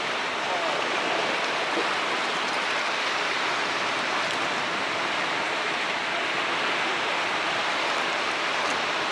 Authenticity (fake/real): fake